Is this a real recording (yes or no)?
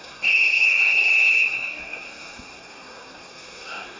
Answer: no